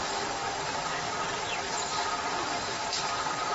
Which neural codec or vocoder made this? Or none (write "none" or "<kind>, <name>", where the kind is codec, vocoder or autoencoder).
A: none